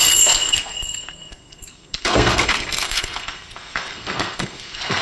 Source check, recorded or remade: remade